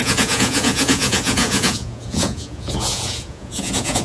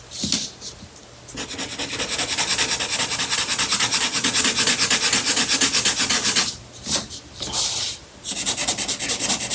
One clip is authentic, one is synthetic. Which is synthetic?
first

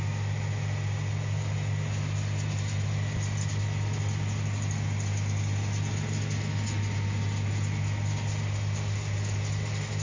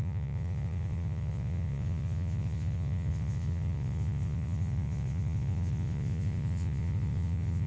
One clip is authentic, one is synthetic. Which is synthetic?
second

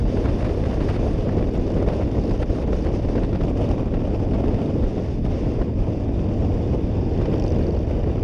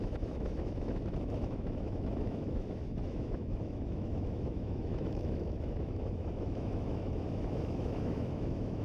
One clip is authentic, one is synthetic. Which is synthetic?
second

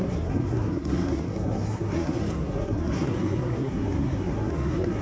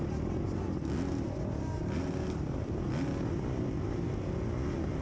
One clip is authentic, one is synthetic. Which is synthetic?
first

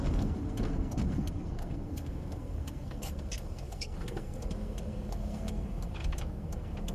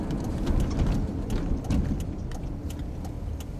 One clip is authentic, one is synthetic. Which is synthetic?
first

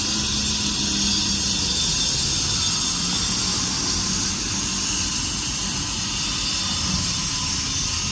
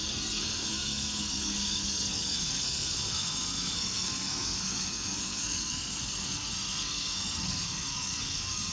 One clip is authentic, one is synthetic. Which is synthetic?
second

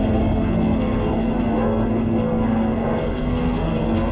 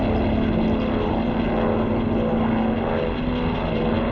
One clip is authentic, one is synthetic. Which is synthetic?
first